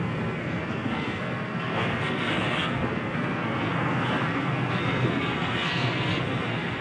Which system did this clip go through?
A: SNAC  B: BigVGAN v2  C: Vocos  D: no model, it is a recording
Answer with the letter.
A